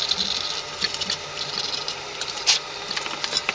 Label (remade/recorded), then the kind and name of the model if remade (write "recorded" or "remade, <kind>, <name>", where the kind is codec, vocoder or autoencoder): recorded